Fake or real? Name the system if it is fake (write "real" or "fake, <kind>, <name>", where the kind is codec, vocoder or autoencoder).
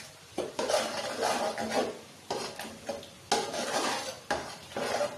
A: real